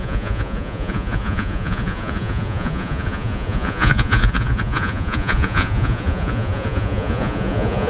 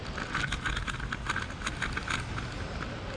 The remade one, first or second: first